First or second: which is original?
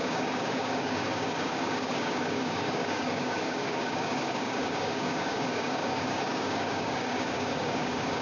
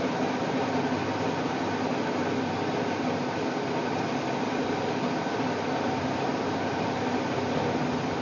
second